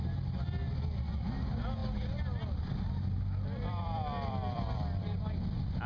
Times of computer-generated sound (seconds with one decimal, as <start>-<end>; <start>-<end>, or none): 1.8-5.3